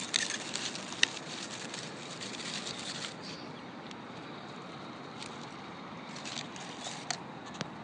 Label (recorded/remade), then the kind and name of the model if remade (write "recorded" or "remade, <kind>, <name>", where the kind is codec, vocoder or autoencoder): recorded